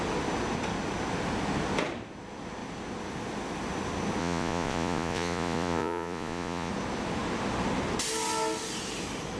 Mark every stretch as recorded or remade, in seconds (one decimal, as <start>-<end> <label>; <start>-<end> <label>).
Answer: 0.0-4.2 recorded; 4.2-6.7 remade; 6.7-9.4 recorded